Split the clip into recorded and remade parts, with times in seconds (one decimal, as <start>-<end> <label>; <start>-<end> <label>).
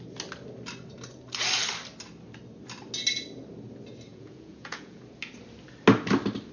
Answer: 0.0-4.1 recorded; 4.1-5.0 remade; 5.0-6.5 recorded